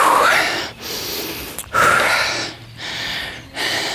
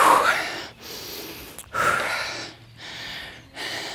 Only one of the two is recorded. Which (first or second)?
second